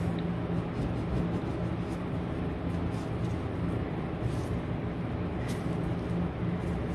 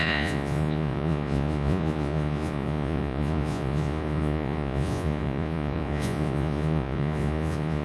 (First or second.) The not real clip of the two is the second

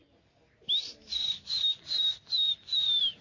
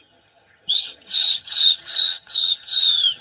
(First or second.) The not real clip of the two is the second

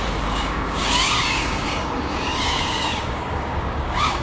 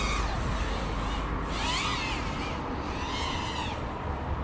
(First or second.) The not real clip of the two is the first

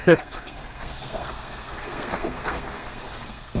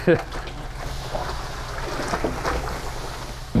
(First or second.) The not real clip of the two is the first